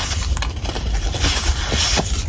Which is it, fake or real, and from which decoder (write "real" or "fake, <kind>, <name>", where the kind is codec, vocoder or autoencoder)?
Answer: real